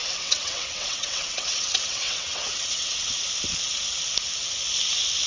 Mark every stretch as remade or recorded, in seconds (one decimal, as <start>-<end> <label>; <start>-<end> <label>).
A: 0.0-3.2 remade; 3.2-5.3 recorded